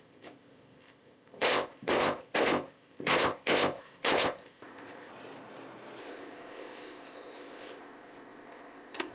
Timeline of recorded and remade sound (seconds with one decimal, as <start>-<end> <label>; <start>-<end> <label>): 0.0-5.1 remade; 5.1-6.0 recorded; 6.0-9.1 remade